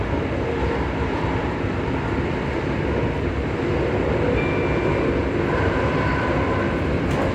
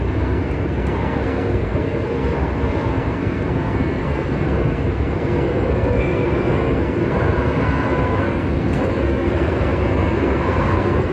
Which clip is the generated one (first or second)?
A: second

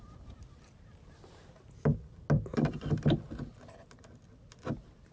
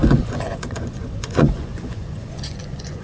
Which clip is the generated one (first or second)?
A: second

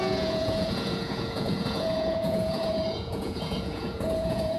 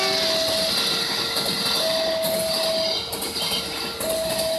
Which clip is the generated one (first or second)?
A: first